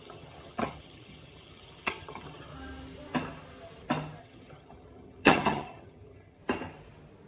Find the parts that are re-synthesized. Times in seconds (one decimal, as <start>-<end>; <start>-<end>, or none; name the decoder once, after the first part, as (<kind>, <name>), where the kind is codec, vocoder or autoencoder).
0.0-2.5 (vocoder, HiFi-GAN); 4.2-6.4